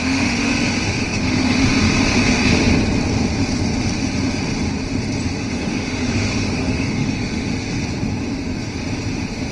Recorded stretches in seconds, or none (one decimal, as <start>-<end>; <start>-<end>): 0.5-1.0; 1.7-5.4; 7.5-9.5